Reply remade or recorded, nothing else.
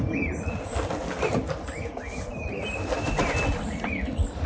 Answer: recorded